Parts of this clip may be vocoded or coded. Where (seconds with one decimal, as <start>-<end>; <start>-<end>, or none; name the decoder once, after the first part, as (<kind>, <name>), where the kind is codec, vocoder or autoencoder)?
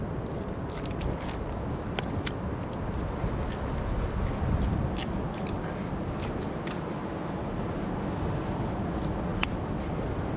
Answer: none